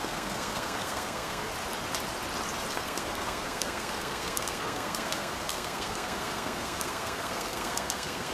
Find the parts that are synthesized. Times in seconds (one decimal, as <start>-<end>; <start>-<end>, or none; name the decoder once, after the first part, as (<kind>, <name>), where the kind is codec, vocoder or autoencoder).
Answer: 0.0-1.5 (codec, SNAC); 2.7-8.3